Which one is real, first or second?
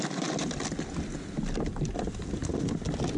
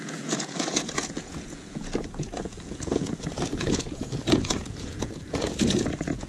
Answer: first